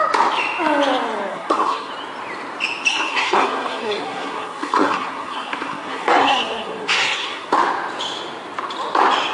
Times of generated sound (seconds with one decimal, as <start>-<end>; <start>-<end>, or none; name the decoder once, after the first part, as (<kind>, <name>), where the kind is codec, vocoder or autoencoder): 1.3-1.9 (codec, SNAC); 2.9-7.5